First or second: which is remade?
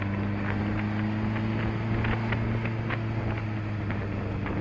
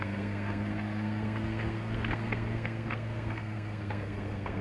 second